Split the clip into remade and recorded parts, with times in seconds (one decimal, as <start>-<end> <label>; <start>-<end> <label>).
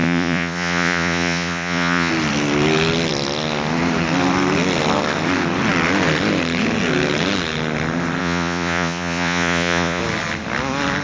0.0-2.1 remade; 2.1-8.2 recorded; 8.2-10.0 remade; 10.0-11.0 recorded